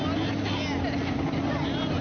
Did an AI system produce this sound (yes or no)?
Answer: no